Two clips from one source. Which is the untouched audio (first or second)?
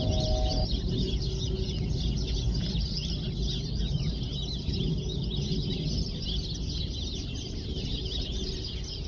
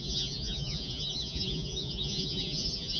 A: first